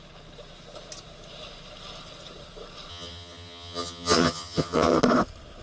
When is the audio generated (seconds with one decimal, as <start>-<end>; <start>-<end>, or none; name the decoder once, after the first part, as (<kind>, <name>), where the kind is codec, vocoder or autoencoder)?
2.9-5.0 (vocoder, HiFi-GAN)

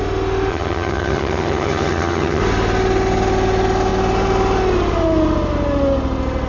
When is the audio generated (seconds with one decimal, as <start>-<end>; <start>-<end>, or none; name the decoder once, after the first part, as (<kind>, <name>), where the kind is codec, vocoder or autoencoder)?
0.5-2.4 (vocoder, HiFi-GAN)

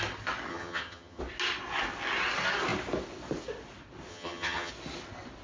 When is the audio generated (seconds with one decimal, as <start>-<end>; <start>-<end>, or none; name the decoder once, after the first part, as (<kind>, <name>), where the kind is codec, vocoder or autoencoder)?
0.5-1.2 (vocoder, HiFi-GAN); 4.1-4.7

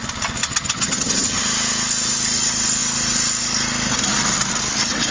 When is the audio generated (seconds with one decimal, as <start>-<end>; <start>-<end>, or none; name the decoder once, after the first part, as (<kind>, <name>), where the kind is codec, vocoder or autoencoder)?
0.4-1.4 (vocoder, HiFi-GAN)

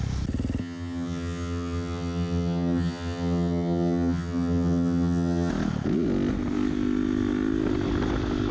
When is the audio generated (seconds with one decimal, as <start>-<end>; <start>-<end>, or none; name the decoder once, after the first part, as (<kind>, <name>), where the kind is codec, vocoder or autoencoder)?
0.6-5.5 (vocoder, HiFi-GAN)

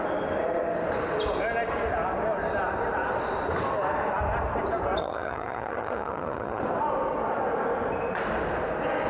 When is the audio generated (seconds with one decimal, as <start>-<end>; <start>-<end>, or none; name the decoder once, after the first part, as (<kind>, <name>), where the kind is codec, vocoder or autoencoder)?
5.0-6.6 (vocoder, HiFi-GAN)

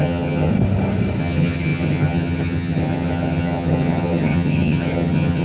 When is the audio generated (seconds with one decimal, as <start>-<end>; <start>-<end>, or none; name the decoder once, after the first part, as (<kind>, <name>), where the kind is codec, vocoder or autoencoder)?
0.0-0.5 (vocoder, HiFi-GAN); 1.2-5.4

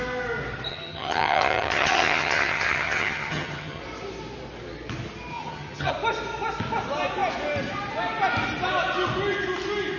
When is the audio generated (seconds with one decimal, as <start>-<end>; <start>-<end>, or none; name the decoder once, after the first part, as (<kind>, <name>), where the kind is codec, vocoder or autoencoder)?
0.7-3.8 (vocoder, HiFi-GAN); 5.3-5.9